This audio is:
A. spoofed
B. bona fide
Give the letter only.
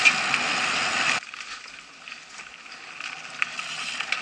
B